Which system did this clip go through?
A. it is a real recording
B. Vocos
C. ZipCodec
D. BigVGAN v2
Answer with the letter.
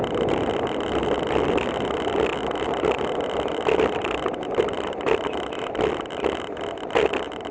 A